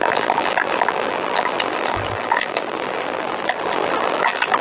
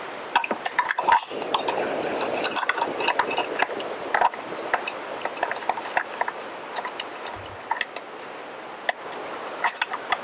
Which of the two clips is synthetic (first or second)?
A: first